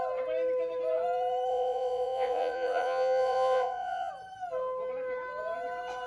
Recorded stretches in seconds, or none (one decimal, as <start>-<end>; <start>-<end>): 0.0-1.5; 4.1-6.1